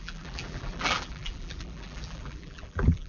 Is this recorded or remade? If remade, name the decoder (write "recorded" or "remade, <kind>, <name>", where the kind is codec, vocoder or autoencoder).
remade, vocoder, BigVGAN v2